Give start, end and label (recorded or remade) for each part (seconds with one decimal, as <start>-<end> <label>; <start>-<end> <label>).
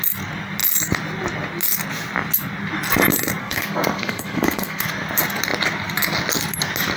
0.0-3.4 recorded; 3.4-4.8 remade; 4.8-7.0 recorded